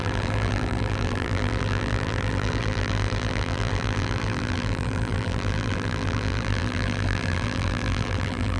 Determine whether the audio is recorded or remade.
remade